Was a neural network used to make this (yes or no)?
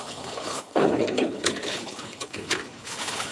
yes